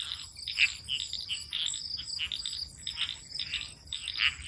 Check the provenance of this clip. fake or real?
real